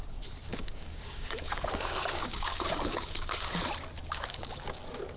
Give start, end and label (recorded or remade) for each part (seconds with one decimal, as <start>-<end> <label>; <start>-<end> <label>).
0.0-0.5 recorded; 0.5-3.6 remade; 3.6-4.0 recorded; 4.0-4.8 remade; 4.8-5.2 recorded